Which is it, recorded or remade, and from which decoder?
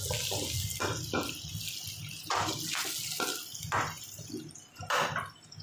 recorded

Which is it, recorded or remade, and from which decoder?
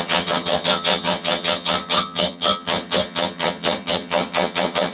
remade, vocoder, HiFi-GAN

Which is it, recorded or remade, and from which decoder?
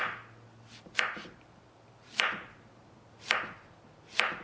recorded